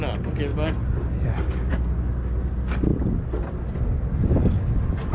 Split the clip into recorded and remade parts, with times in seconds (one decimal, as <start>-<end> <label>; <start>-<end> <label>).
0.0-5.1 recorded